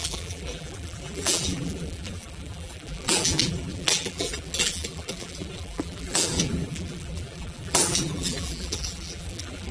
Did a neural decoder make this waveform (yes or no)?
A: yes